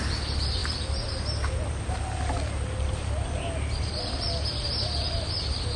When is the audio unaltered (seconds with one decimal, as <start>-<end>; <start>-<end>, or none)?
0.0-5.8